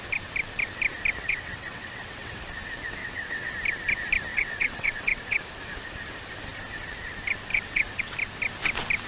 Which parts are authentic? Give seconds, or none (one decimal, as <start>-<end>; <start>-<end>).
0.0-1.2; 2.4-3.0; 3.5-4.3; 5.4-7.5; 8.0-9.1